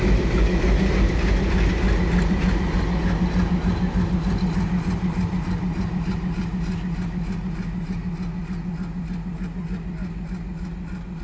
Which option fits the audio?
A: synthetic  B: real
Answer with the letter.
B